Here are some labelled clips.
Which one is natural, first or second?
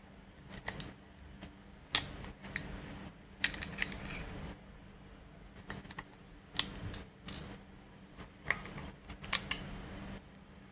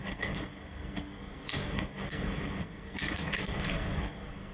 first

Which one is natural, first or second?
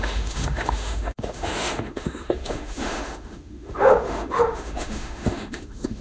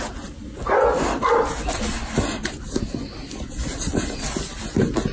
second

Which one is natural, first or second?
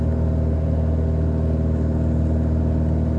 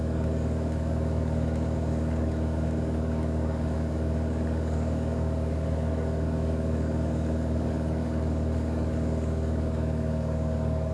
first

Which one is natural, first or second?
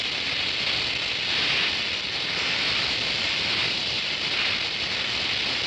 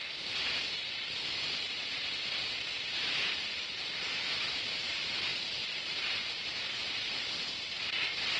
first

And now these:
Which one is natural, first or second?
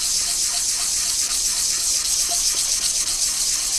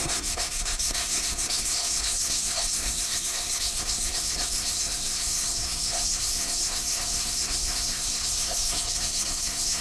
first